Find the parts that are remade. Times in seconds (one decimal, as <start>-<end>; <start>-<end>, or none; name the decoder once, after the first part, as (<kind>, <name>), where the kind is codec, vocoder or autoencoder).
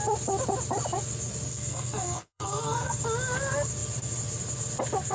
1.5-3.0 (codec, SNAC)